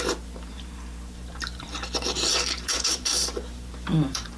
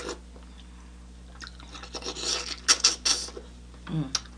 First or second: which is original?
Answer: second